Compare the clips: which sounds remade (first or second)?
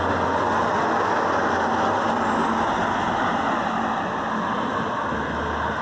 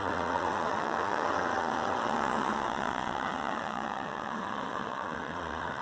second